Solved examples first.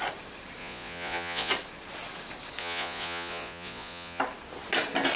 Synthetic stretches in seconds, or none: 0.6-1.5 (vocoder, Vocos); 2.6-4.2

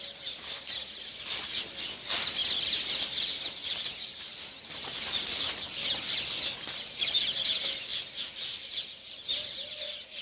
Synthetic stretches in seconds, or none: none

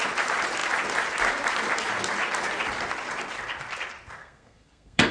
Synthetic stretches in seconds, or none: 4.2-5.1 (codec, SNAC)

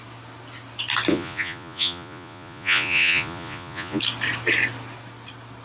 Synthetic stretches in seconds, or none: 1.1-4.0 (vocoder, Vocos)

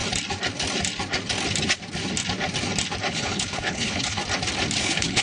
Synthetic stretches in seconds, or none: 3.1-4.2 (codec, HILCodec); 4.8-5.2

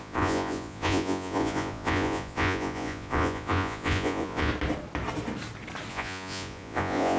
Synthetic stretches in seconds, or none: 0.0-4.5 (vocoder, Vocos); 5.9-7.2

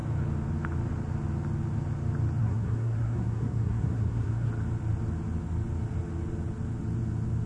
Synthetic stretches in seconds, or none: 2.4-4.5 (codec, SNAC)

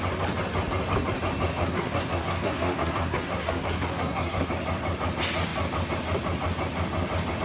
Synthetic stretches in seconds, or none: 1.6-4.5 (codec, SNAC)